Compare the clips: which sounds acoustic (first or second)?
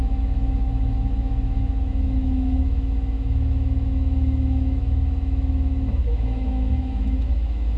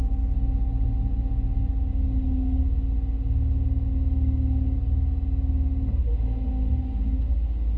second